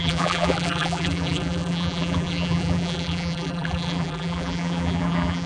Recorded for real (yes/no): no